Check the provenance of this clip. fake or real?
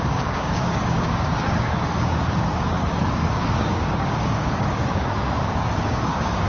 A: fake